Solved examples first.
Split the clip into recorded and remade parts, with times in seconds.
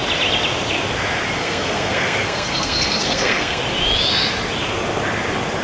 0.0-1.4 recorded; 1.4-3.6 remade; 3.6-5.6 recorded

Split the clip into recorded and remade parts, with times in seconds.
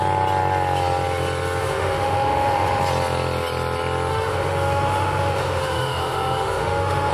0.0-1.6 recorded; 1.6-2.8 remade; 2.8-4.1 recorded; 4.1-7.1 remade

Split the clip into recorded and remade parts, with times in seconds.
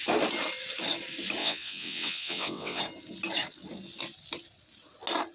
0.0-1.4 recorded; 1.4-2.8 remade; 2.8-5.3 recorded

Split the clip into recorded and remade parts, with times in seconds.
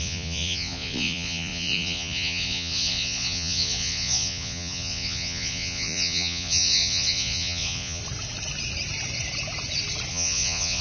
0.0-8.0 remade; 8.0-10.1 recorded; 10.1-10.8 remade